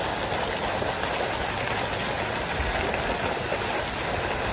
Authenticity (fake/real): real